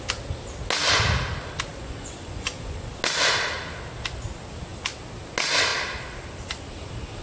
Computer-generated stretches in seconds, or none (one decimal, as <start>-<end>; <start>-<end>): 1.7-2.9